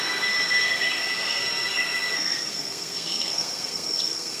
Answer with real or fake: fake